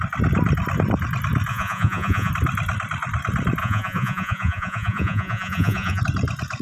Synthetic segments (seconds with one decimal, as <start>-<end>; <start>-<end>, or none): 1.5-2.3; 3.6-6.0